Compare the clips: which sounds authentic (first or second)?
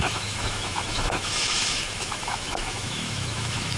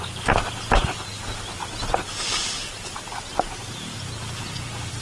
second